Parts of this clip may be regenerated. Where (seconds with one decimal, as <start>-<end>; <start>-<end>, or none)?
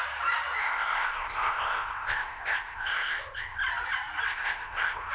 0.6-3.6; 4.3-5.1